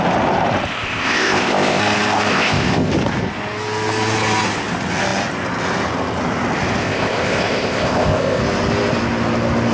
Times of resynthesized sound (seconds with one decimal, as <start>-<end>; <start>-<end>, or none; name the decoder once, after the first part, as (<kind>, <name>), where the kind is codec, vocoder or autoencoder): 0.7-1.8 (codec, ZipCodec); 2.3-2.9; 6.8-8.4